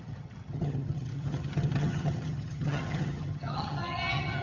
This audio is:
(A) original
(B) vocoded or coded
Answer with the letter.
B